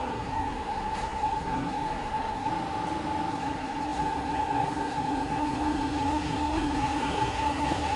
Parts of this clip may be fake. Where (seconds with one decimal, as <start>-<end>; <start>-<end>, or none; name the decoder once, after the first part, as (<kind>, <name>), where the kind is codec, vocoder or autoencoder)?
0.0-2.5 (codec, SNAC); 3.3-8.0